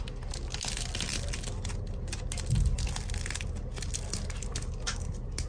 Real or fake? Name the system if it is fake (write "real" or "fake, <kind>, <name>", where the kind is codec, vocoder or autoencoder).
real